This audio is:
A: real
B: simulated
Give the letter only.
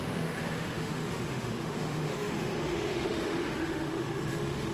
B